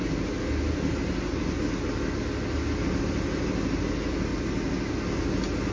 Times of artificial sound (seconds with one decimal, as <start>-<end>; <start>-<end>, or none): none